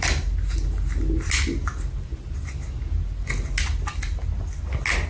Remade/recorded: recorded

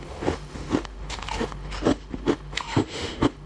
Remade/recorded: remade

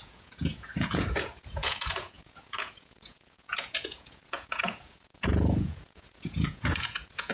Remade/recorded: remade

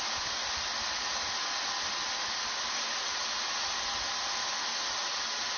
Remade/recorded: recorded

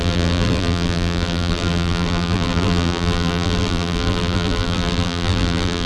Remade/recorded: remade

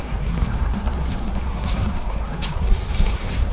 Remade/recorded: remade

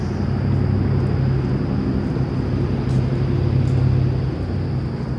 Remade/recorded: recorded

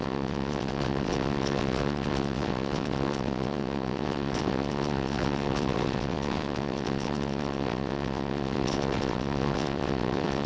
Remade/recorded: remade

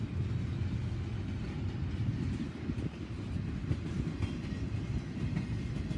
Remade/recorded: recorded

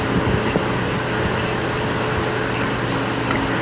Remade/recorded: recorded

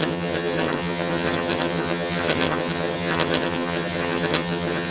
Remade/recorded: remade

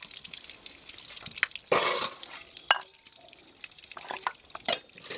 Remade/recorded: recorded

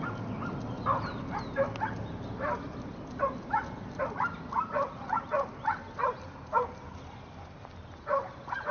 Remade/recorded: recorded